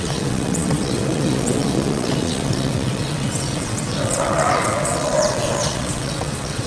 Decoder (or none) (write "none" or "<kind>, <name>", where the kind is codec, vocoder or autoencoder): vocoder, WaveNeXt